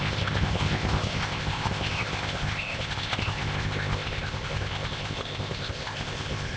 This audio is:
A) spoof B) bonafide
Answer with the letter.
A